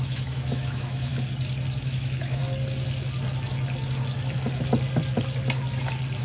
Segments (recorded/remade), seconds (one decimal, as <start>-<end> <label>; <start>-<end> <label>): 0.0-1.1 remade; 1.1-1.8 recorded; 1.8-2.4 remade; 2.4-6.2 recorded